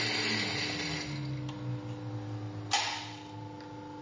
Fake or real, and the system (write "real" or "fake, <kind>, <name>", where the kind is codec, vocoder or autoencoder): real